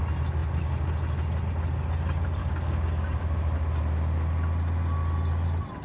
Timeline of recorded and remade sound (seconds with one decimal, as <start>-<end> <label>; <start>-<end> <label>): 0.0-2.4 recorded; 2.4-3.2 remade; 3.2-5.8 recorded